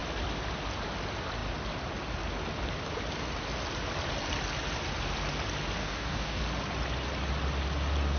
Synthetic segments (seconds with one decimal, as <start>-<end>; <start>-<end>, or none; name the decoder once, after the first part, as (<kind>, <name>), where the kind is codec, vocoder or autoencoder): 5.8-6.4 (codec, DAC)